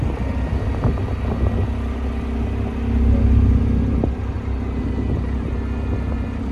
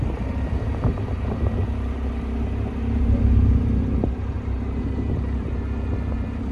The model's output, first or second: second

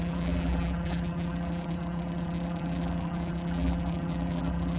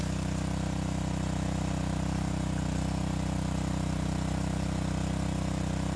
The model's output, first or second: first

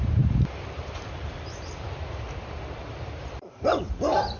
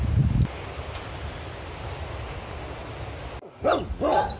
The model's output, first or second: first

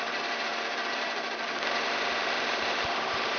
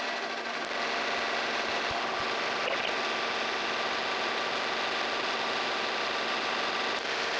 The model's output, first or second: first